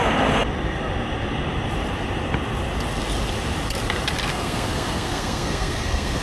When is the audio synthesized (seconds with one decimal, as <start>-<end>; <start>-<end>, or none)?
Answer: 4.3-6.2